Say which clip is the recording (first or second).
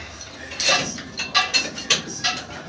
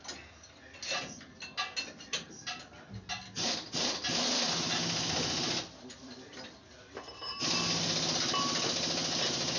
second